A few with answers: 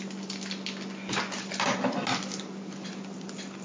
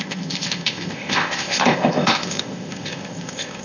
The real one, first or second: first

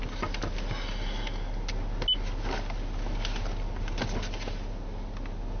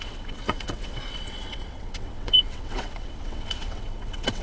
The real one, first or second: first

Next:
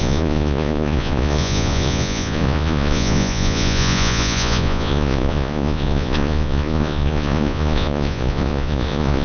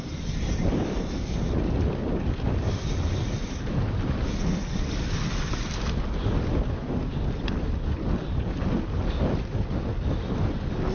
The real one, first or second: second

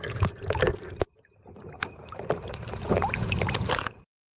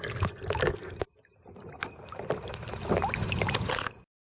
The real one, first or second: second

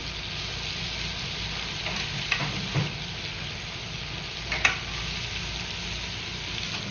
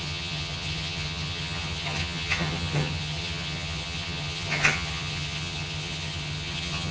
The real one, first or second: first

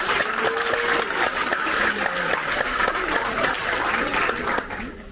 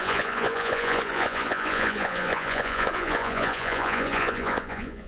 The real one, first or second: first